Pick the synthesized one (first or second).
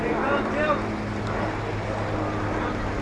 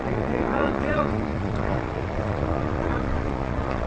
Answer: second